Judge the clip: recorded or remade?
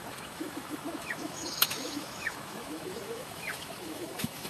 remade